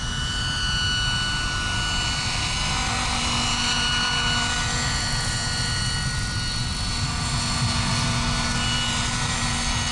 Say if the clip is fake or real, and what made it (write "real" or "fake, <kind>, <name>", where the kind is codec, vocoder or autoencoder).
real